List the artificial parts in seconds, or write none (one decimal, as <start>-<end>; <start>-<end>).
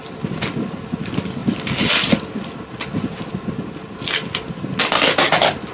none